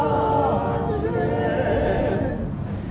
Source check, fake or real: real